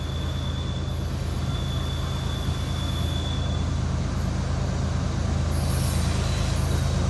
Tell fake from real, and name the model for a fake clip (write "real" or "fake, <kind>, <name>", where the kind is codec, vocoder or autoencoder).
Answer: real